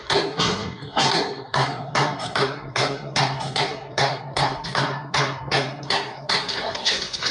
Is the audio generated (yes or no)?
yes